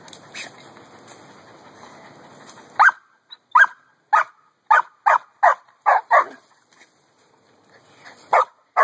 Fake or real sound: real